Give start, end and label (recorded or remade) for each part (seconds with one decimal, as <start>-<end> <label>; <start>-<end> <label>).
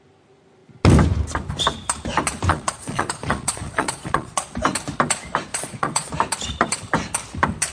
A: 0.0-2.5 recorded; 2.5-4.4 remade; 4.4-5.5 recorded; 5.5-6.1 remade; 6.1-7.7 recorded